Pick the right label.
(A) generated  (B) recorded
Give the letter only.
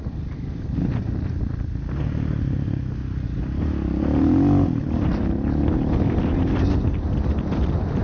B